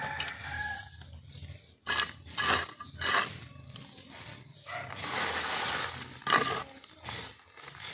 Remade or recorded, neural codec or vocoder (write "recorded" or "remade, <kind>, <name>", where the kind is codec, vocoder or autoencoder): recorded